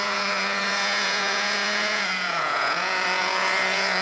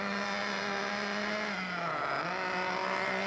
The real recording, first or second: second